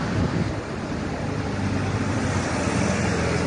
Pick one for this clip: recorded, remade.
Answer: recorded